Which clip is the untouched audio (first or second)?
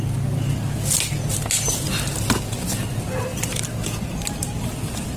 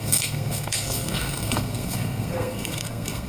first